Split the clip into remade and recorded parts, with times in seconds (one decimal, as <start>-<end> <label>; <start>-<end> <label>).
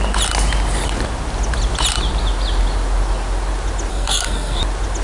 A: 0.0-3.9 recorded; 3.9-4.6 remade; 4.6-5.0 recorded